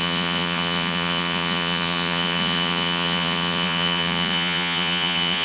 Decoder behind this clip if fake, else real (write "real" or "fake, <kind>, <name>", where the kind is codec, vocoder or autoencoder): fake, vocoder, Vocos